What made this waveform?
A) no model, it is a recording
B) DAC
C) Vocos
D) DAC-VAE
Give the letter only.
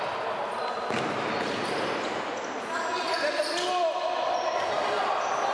A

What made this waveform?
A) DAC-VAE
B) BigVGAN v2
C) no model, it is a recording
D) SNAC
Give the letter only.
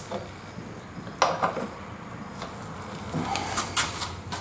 C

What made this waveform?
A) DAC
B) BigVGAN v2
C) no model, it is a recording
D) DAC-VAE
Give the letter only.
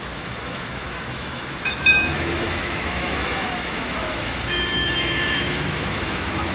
D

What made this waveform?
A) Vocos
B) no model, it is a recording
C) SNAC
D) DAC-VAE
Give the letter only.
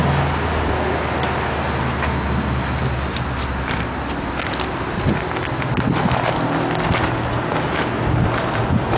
B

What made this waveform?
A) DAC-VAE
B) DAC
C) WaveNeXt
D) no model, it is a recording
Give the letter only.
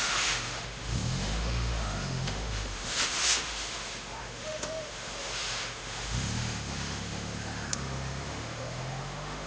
A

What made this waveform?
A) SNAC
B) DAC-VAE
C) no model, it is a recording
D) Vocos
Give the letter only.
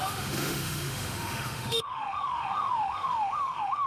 B